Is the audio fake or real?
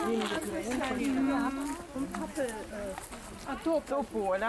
real